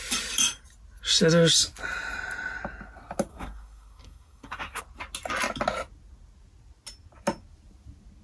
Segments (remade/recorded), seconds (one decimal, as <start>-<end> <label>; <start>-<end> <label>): 0.0-3.3 recorded; 3.3-4.8 remade; 4.8-8.2 recorded